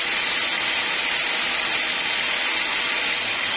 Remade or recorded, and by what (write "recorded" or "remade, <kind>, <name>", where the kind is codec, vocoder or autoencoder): recorded